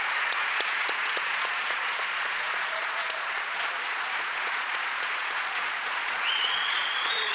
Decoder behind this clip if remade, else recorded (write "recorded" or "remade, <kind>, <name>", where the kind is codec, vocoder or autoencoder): remade, vocoder, Vocos